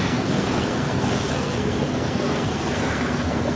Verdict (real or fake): fake